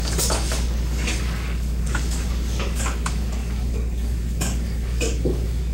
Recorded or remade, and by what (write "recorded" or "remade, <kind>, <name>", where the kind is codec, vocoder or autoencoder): remade, codec, DAC